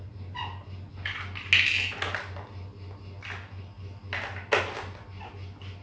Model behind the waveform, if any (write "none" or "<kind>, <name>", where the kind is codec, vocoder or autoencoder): none